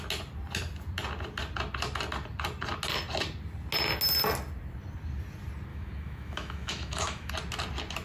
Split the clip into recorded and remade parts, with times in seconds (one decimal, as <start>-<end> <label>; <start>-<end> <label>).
0.0-5.7 recorded; 5.7-7.3 remade; 7.3-8.0 recorded